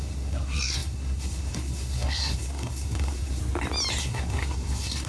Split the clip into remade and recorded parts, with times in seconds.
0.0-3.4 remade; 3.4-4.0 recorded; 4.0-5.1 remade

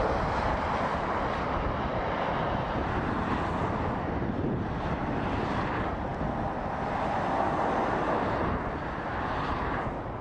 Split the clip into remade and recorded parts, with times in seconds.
0.0-10.2 recorded